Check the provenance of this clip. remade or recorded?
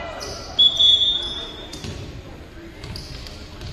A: recorded